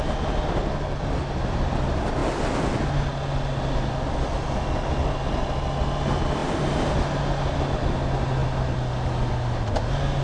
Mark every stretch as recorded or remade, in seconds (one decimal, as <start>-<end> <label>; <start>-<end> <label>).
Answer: 0.0-10.2 recorded